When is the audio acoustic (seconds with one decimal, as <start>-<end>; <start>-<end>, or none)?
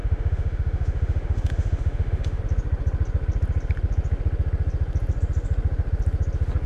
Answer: 2.4-6.7